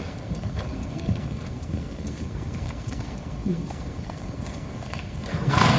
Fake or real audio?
fake